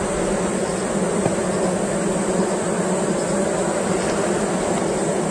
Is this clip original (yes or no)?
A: yes